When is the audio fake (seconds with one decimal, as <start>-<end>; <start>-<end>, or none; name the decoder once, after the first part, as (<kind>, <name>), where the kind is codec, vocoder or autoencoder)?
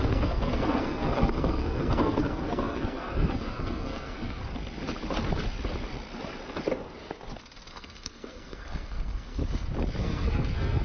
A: 0.0-4.4 (codec, SNAC); 7.7-9.4; 10.0-10.8